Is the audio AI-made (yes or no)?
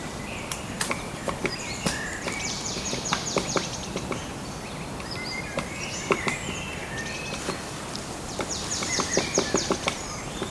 yes